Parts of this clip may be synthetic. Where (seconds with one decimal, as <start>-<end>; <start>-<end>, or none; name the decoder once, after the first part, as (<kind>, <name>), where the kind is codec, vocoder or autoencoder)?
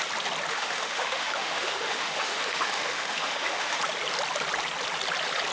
0.5-3.8 (autoencoder, DAC-VAE)